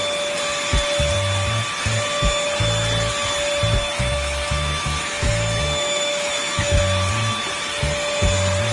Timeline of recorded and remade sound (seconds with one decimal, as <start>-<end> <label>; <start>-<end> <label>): 0.0-3.8 recorded; 3.8-6.8 remade; 6.8-8.7 recorded